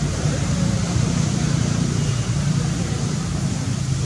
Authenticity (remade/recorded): remade